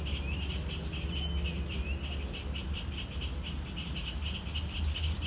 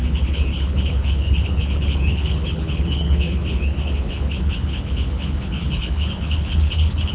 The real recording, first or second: first